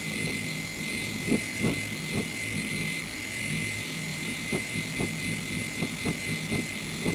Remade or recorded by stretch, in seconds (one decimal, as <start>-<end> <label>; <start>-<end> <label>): 0.0-4.1 recorded; 4.1-4.8 remade; 4.8-7.1 recorded